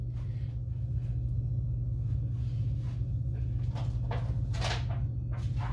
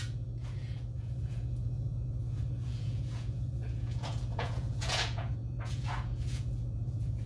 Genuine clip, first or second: first